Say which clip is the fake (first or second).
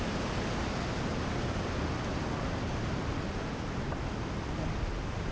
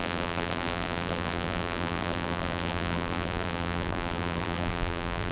second